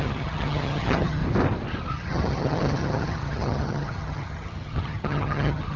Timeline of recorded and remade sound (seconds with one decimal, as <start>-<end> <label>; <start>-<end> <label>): 0.0-1.2 remade; 1.2-1.9 recorded; 1.9-5.8 remade